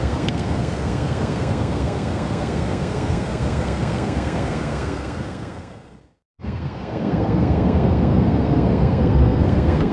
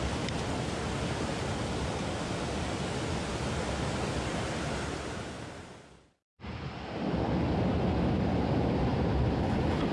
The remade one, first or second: first